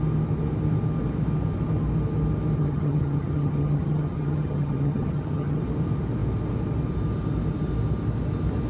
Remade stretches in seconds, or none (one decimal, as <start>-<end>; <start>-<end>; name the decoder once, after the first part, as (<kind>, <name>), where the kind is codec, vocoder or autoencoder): 2.6-5.6 (vocoder, HiFi-GAN)